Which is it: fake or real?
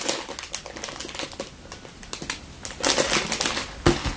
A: real